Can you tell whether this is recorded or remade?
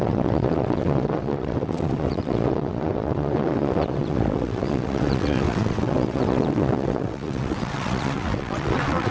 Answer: remade